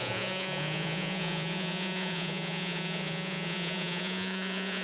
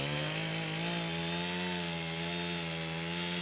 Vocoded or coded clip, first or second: first